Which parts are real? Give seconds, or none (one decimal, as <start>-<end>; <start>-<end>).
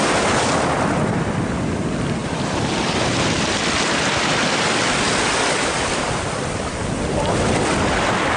0.0-2.2; 6.8-8.4